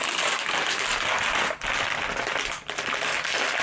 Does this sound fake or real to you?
real